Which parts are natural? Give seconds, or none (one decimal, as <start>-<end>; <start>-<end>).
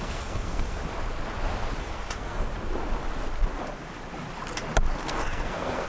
0.8-1.8; 2.5-5.0